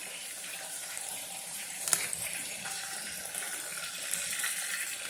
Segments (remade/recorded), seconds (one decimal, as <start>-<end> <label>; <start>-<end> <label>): 0.0-3.1 remade; 3.1-5.1 recorded